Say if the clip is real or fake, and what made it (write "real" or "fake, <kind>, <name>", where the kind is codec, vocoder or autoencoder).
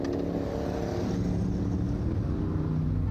real